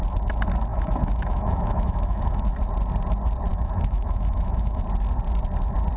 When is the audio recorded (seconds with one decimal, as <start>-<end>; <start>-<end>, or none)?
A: 0.0-0.7; 2.5-3.5; 4.8-6.0